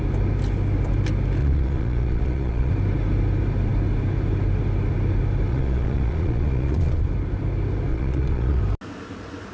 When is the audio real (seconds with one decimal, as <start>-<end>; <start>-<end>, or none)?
0.0-1.4; 2.7-5.5; 7.0-7.9; 8.6-9.5